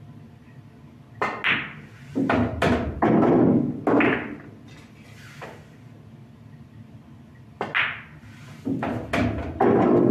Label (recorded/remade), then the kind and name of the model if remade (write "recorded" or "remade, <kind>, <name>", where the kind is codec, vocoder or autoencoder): recorded